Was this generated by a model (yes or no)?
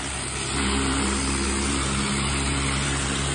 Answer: no